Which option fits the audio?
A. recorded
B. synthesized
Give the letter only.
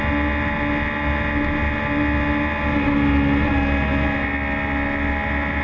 A